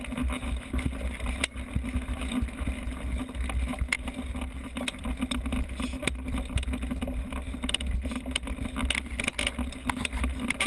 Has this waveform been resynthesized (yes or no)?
no